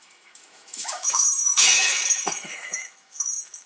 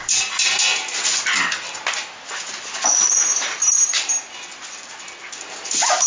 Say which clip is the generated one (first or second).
first